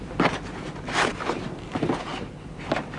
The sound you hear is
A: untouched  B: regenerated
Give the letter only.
A